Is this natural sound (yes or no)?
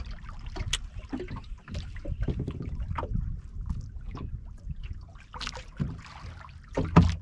yes